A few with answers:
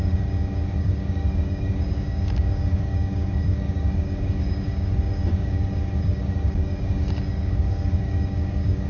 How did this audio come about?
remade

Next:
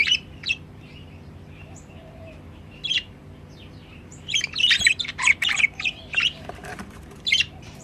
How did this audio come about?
remade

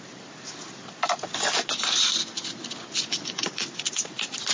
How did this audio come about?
recorded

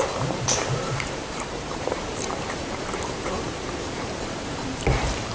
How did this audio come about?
remade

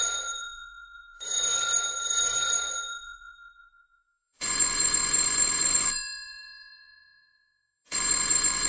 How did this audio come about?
remade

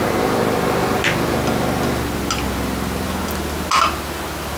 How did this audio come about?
recorded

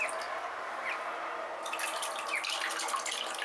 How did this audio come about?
recorded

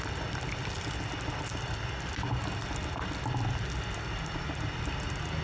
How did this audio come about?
recorded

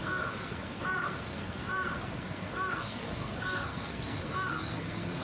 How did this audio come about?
remade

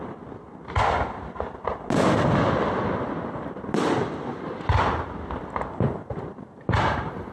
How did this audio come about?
recorded